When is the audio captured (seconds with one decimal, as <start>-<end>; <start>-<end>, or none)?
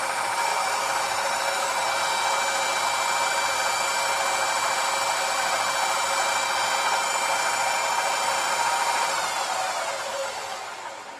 0.0-0.5; 1.9-10.1; 10.6-11.2